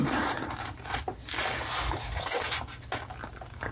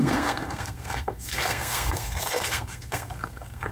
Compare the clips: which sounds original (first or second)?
first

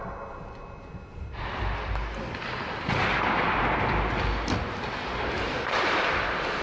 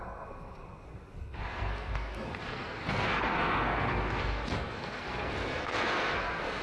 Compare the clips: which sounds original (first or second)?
first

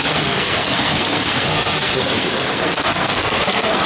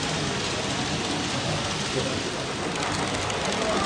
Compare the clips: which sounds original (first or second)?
second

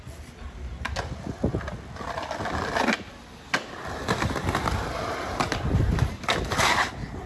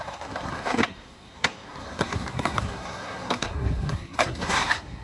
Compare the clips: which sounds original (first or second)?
first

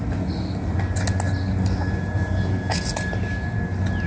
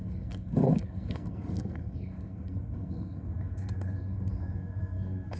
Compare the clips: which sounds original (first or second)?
first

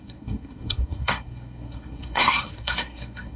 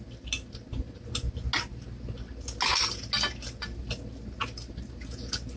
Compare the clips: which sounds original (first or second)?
second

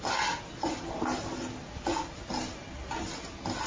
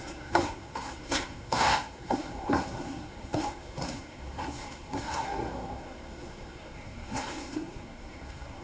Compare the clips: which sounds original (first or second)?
first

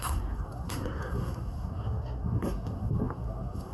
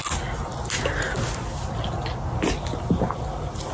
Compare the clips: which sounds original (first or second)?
second